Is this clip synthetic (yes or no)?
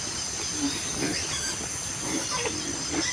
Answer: no